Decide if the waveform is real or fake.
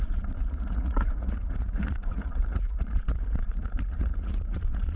fake